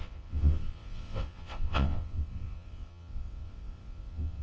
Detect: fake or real fake